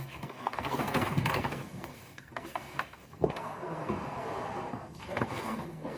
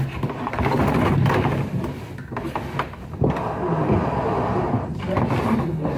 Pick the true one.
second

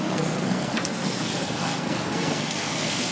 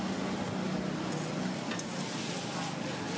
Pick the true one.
second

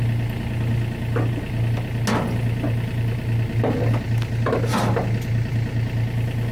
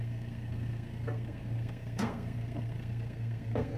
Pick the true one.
first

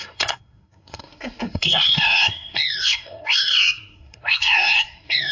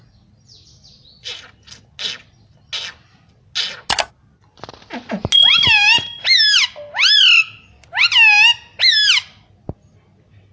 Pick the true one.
second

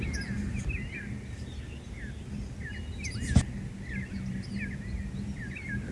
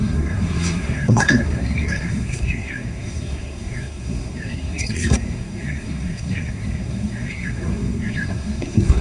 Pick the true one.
first